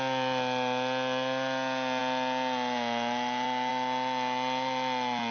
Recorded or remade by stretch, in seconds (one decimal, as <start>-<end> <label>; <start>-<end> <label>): 0.0-5.3 recorded